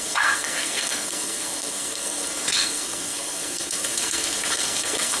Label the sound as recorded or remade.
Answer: remade